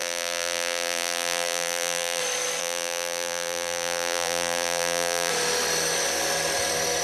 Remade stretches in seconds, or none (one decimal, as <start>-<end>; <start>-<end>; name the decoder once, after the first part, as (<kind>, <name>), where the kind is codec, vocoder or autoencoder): 0.0-2.2 (vocoder, BigVGAN v2); 2.6-5.3